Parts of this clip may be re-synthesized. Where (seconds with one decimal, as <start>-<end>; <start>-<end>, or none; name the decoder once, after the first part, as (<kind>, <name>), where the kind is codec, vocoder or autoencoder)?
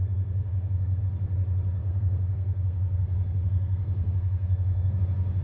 0.0-1.0 (codec, SNAC); 1.8-5.0